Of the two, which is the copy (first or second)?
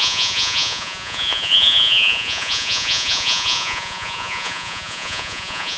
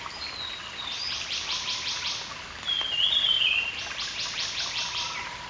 first